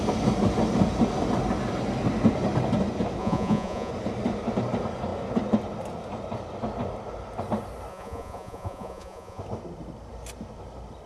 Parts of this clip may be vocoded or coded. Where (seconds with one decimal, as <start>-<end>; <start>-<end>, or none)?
3.2-3.9; 7.9-9.4